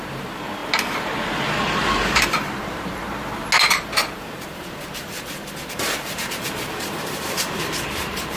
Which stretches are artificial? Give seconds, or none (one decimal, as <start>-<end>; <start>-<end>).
0.0-0.6; 1.6-3.0; 3.7-8.4